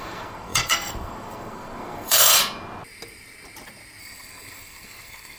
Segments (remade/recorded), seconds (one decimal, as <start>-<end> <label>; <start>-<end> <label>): 0.0-2.4 remade; 2.4-4.0 recorded; 4.0-5.4 remade